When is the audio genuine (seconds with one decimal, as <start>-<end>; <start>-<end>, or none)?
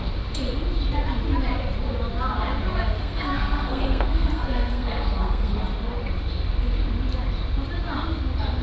0.0-3.0; 5.6-8.6